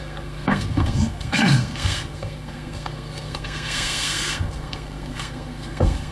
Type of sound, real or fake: fake